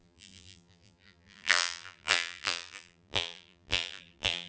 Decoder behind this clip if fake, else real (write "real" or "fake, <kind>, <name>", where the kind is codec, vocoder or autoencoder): fake, vocoder, BigVGAN v2